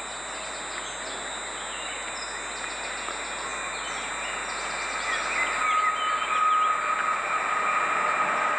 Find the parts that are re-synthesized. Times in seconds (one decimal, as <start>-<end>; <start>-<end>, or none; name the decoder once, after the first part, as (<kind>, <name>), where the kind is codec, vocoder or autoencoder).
none

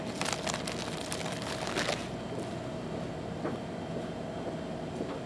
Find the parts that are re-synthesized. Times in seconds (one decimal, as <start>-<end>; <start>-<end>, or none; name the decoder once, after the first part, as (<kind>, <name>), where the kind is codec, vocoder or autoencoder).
none

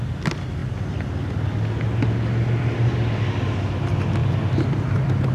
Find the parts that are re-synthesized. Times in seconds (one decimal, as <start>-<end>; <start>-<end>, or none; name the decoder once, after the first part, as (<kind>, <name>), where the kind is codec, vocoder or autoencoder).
none

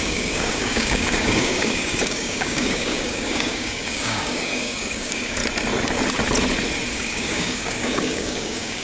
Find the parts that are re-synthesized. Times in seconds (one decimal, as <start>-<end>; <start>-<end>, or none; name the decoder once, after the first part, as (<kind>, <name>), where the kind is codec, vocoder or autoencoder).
0.0-5.4 (codec, DAC); 6.9-8.8

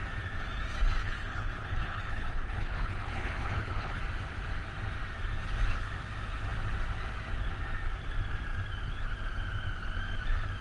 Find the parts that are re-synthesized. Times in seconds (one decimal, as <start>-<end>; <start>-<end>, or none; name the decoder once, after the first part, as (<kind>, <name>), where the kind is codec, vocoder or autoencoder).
1.0-4.0 (codec, HILCodec)

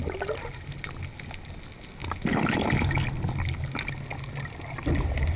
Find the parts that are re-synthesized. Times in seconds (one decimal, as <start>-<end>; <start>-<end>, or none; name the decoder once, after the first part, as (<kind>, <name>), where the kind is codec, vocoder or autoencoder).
none

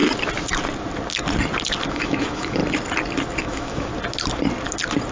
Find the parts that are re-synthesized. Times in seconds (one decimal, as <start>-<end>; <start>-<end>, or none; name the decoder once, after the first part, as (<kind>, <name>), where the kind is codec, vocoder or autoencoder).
1.9-2.6 (autoencoder, DAC-VAE); 3.4-3.9